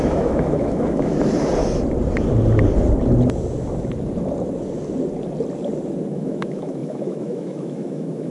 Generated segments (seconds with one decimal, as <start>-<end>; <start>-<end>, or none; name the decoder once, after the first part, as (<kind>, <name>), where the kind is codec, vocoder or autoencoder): 0.0-1.1 (autoencoder, DAC-VAE); 6.1-8.3